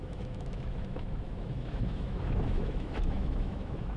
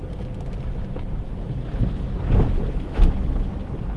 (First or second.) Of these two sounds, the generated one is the first